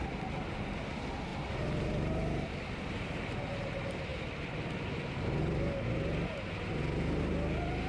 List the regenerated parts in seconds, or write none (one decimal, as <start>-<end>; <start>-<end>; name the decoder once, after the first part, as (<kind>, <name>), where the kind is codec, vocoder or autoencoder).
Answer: none